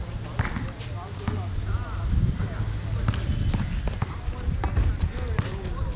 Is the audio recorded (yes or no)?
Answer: yes